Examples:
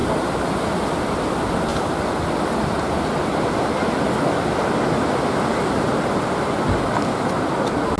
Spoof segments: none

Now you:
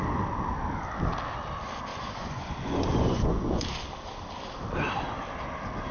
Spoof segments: 1.9-3.6 (vocoder, Vocos)

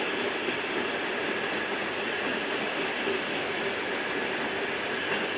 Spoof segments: 1.7-2.7 (vocoder, Vocos)